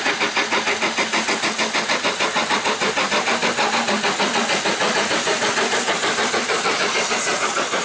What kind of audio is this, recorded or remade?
recorded